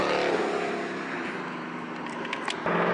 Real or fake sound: real